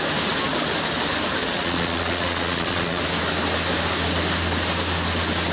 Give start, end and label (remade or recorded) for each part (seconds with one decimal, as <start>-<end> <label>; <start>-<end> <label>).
0.0-1.4 recorded; 1.4-3.0 remade; 3.0-5.5 recorded